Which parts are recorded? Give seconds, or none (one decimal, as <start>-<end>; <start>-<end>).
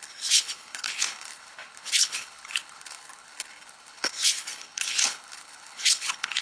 none